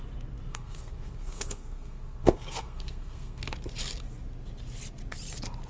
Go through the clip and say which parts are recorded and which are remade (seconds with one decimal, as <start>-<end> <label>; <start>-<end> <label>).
0.0-0.5 recorded; 0.5-3.4 remade; 3.4-5.7 recorded